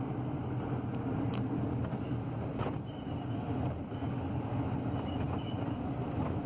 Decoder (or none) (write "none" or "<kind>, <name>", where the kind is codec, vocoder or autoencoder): none